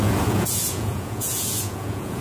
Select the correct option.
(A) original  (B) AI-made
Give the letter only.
B